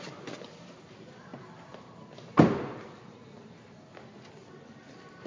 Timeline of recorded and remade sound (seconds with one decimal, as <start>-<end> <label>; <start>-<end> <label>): 0.0-5.3 recorded